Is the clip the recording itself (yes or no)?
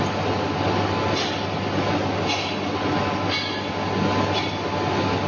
yes